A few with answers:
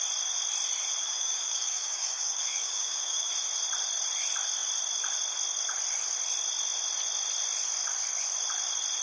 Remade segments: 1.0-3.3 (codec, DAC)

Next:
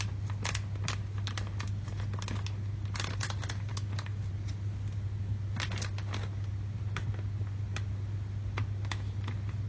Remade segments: 3.7-4.3 (codec, DAC)

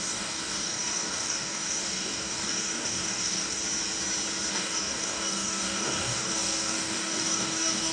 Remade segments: 0.0-3.6 (codec, DAC); 4.5-7.9

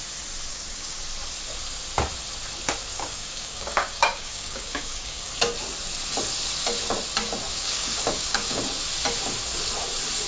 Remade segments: 0.5-1.0 (codec, DAC); 2.9-5.3; 7.5-8.6